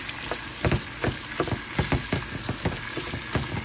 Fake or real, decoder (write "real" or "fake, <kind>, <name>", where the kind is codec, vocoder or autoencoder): real